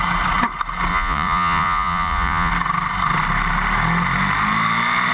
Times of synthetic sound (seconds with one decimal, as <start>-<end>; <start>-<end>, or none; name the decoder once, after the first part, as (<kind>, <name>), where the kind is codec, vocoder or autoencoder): 0.9-2.5 (vocoder, Vocos)